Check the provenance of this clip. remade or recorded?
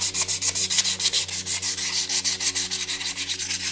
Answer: recorded